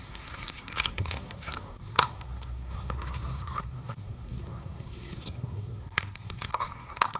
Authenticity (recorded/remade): remade